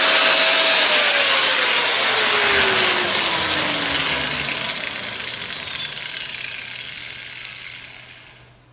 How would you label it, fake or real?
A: real